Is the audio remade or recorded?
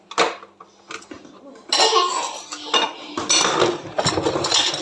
recorded